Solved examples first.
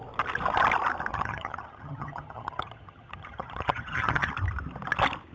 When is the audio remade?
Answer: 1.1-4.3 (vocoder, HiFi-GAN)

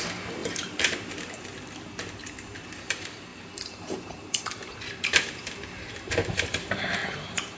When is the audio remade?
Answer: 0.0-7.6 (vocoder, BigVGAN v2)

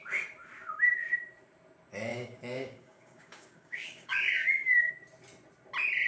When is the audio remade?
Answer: 2.1-4.9 (codec, DAC)

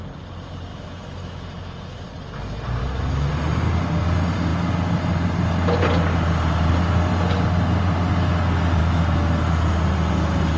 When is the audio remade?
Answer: 0.7-2.0 (autoencoder, DAC-VAE); 2.8-3.3; 8.8-9.7

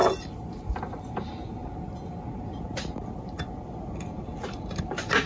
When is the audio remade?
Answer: none

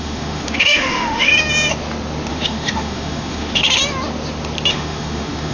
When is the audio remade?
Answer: 0.0-1.3 (autoencoder, DAC-VAE); 2.3-3.6; 4.7-5.5

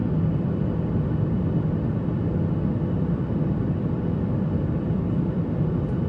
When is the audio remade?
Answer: none

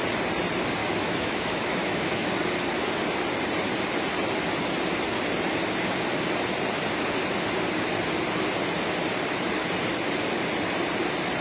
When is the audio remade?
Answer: 0.8-2.3 (autoencoder, DAC-VAE)